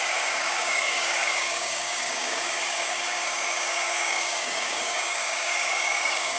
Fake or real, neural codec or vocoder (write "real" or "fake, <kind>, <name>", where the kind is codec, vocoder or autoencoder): fake, codec, DAC